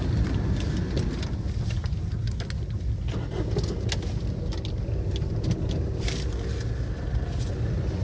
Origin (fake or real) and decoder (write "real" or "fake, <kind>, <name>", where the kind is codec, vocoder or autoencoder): real